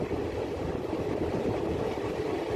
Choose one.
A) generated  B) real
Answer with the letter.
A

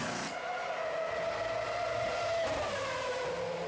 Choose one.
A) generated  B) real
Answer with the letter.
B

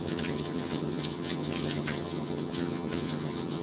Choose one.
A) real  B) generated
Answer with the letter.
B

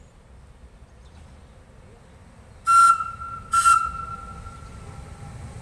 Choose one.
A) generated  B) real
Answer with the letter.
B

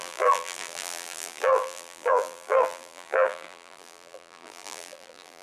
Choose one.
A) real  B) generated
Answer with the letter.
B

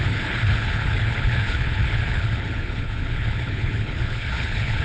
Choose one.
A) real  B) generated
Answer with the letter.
B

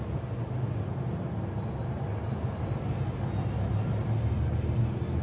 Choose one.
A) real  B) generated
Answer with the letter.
A